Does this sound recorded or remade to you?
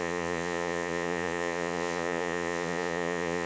remade